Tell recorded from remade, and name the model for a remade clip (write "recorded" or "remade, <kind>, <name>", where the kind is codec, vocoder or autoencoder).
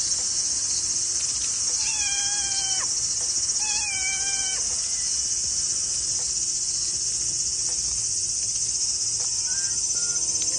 recorded